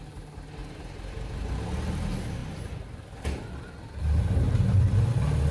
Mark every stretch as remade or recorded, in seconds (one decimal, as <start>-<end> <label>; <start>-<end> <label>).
0.0-0.6 recorded; 0.6-1.6 remade; 1.6-2.4 recorded; 2.4-5.5 remade